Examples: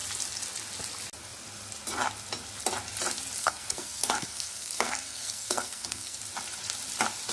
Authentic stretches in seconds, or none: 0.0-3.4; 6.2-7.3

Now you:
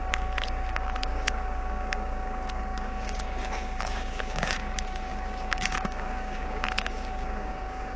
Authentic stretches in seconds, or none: none

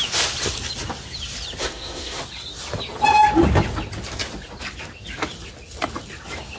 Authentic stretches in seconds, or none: 0.0-1.6; 2.2-6.6

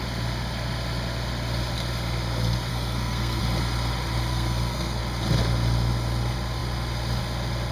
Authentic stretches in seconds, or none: 0.0-2.7; 3.4-4.3; 5.0-7.7